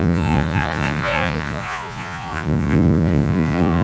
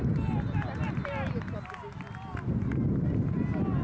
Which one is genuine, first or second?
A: second